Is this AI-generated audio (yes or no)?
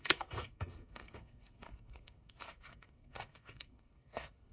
yes